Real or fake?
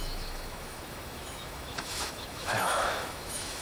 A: fake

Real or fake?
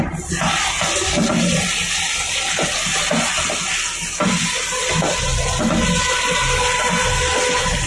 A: real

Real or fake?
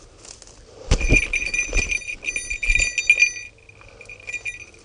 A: real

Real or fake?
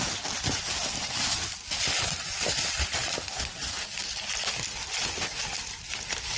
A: real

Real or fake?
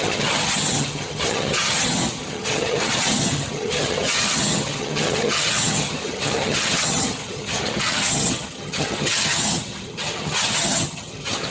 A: fake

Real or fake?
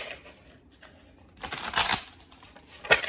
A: real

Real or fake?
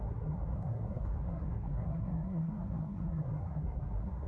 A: fake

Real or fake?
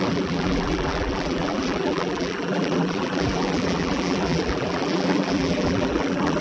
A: fake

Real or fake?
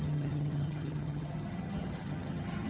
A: fake